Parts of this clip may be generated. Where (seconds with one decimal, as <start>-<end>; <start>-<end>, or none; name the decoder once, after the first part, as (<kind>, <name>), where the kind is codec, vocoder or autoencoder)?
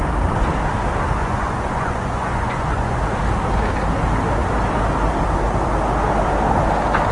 1.2-3.0 (vocoder, Vocos)